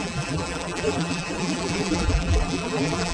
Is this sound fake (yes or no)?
yes